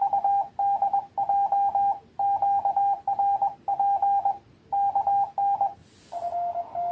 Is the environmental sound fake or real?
real